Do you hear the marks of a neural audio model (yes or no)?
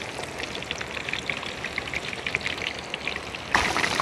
no